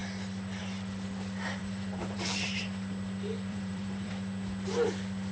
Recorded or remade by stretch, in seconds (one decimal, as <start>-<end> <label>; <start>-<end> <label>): 0.0-1.6 recorded; 1.6-2.6 remade; 2.6-3.5 recorded; 3.5-4.1 remade; 4.1-5.3 recorded